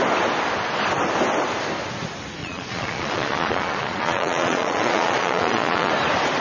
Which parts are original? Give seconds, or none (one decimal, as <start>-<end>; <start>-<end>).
0.0-2.4; 5.9-6.4